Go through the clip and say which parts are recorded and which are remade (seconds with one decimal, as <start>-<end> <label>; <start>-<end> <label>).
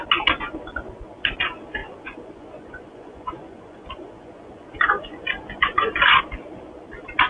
0.0-1.8 recorded; 1.8-6.2 remade; 6.2-7.3 recorded